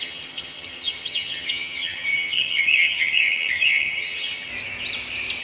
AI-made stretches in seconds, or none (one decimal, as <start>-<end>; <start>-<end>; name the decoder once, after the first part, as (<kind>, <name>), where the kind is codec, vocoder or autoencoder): 0.0-4.5 (vocoder, HiFi-GAN)